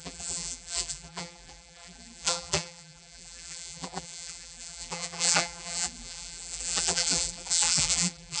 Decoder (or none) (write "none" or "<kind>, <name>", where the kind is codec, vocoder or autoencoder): vocoder, BigVGAN v2